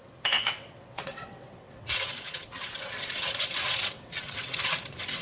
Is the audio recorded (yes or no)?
no